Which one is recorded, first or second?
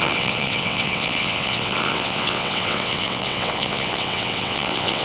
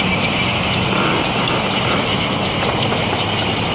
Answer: second